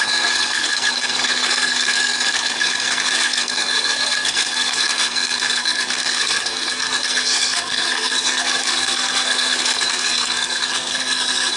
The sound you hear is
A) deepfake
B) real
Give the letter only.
A